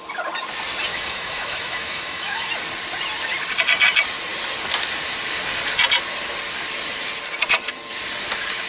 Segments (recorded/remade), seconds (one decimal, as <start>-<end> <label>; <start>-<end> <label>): 0.0-0.9 recorded; 0.9-2.5 remade; 2.5-8.7 recorded